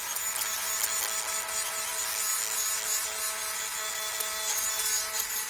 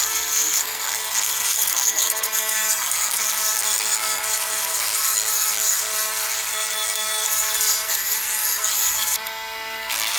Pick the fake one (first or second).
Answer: second